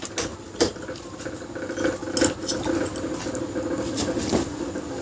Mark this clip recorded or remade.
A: recorded